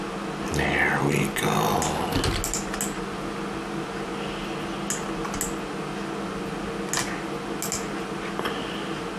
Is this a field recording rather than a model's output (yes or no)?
yes